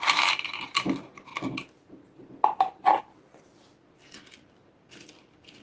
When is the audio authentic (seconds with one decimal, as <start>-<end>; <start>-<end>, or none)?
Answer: 0.0-5.6